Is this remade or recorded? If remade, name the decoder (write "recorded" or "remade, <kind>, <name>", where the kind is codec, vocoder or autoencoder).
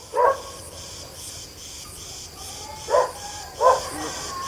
recorded